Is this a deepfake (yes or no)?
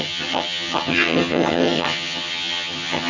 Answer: yes